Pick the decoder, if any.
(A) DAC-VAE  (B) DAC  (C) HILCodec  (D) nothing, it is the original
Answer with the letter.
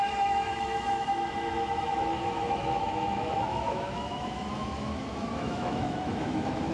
A